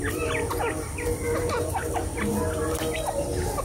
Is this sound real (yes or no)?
yes